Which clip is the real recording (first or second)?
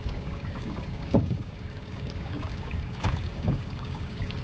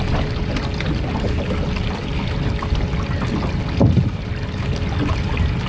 second